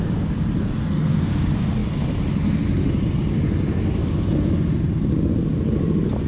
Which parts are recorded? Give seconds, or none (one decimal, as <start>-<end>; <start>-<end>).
0.0-0.6; 1.3-6.3